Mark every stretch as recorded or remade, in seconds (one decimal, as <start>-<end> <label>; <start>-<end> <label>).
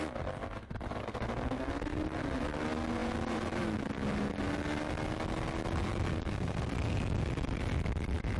0.0-1.0 recorded; 1.0-1.7 remade; 1.7-6.1 recorded; 6.1-6.7 remade; 6.7-8.4 recorded